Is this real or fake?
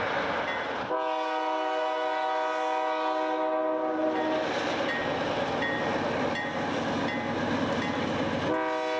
real